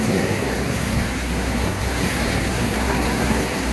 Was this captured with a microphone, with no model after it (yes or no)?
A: no